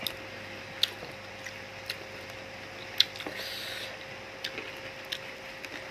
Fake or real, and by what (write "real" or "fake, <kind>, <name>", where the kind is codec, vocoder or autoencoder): real